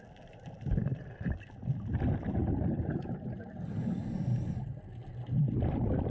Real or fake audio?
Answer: real